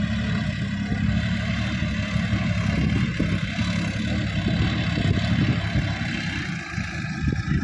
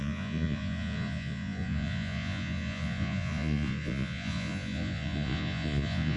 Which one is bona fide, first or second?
first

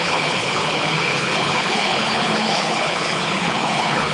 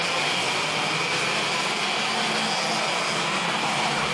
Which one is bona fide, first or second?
second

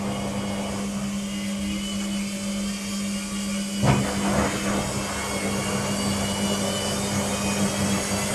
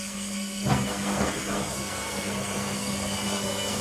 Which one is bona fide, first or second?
first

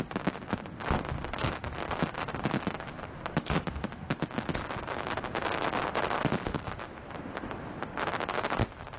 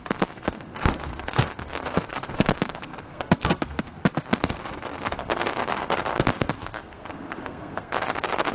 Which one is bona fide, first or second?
first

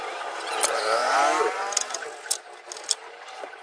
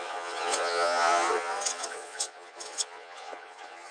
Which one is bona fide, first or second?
first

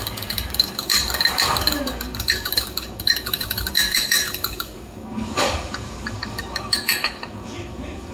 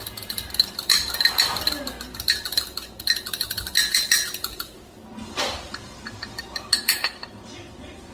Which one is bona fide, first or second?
second